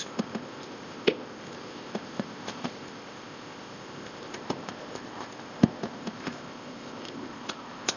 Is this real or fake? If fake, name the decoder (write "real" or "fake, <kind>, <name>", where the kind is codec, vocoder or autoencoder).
fake, codec, ZipCodec